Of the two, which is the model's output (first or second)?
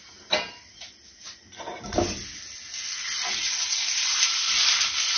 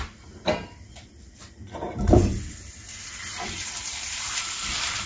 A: second